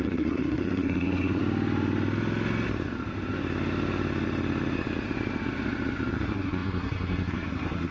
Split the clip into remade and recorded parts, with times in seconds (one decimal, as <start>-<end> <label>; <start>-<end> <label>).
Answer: 0.0-1.4 remade; 1.4-6.1 recorded; 6.1-7.9 remade